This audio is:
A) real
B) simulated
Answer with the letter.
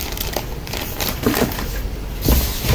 B